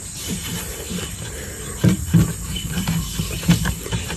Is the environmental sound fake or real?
fake